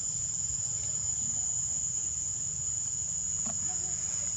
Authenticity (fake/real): fake